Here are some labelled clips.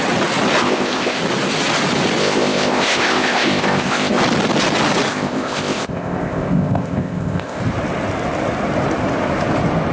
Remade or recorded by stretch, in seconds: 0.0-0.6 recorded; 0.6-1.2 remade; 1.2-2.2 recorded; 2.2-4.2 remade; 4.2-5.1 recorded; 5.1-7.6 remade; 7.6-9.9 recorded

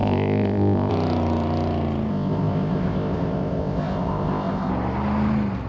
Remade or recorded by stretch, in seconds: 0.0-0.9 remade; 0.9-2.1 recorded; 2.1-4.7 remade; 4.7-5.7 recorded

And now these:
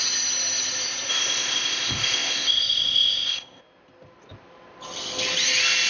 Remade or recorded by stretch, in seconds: 0.0-1.1 recorded; 1.1-3.6 remade; 3.6-5.9 recorded